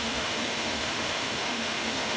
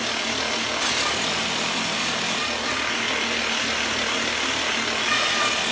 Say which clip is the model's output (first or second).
first